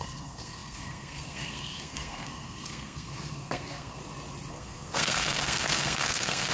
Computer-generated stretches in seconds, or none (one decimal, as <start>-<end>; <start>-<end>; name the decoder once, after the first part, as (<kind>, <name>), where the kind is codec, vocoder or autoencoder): 0.0-4.0 (codec, SNAC); 4.5-6.5